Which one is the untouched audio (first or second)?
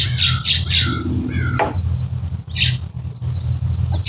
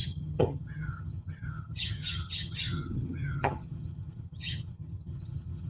first